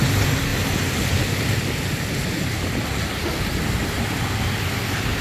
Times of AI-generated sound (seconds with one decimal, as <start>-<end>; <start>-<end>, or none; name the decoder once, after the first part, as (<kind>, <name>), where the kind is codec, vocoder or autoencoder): none